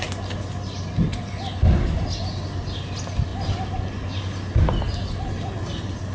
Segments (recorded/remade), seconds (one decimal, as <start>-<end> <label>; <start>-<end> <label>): 0.0-6.1 recorded